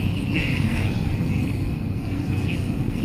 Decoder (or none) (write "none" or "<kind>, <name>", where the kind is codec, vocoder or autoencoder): codec, SNAC